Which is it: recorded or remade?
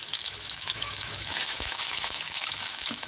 remade